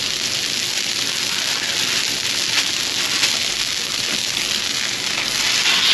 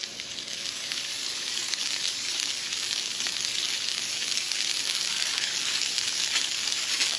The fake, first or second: second